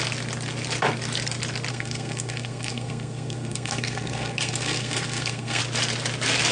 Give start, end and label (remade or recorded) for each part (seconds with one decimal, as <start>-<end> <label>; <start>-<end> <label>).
0.0-1.7 recorded; 1.7-5.6 remade; 5.6-6.5 recorded